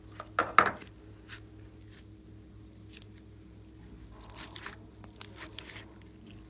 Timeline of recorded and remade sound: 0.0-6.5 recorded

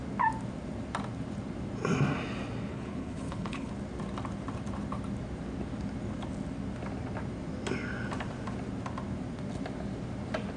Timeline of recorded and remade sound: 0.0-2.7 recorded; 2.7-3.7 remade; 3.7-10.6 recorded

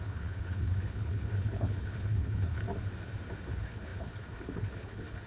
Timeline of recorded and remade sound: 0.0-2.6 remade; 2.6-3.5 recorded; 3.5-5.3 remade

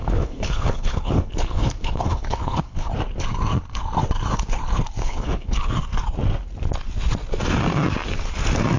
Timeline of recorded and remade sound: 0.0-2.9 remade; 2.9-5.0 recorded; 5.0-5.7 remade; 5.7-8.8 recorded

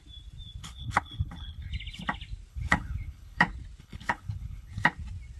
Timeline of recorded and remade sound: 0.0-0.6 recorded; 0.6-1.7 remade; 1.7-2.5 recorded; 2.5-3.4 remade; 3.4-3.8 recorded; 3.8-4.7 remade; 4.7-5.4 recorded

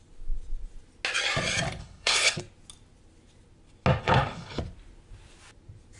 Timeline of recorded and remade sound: 0.0-1.8 recorded; 1.8-2.4 remade; 2.4-4.0 recorded; 4.0-4.6 remade; 4.6-6.0 recorded